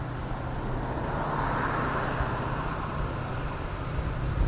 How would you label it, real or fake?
real